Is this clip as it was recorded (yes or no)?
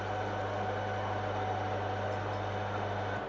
yes